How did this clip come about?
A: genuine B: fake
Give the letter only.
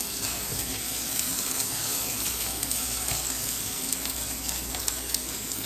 B